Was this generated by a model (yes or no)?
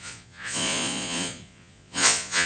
yes